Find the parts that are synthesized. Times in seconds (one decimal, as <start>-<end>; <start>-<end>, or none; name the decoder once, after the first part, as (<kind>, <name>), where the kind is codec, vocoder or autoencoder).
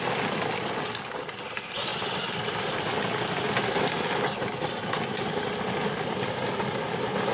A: none